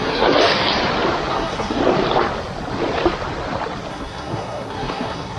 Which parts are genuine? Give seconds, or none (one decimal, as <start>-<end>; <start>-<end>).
0.4-1.3; 1.8-3.9